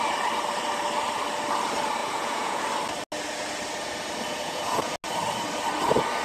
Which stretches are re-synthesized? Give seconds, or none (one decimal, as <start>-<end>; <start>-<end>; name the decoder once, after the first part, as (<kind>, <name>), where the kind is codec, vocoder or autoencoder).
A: 2.0-2.6 (vocoder, Vocos); 4.3-4.9